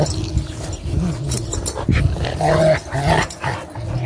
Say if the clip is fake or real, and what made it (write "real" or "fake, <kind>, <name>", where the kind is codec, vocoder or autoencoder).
real